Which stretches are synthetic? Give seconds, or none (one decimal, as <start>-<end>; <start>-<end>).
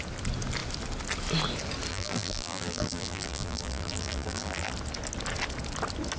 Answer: 1.9-4.7